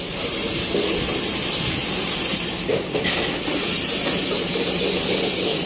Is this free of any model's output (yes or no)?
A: no